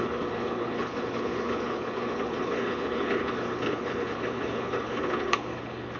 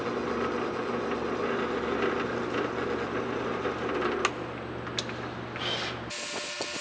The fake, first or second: first